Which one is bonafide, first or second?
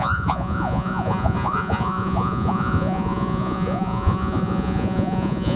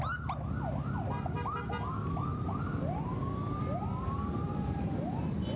second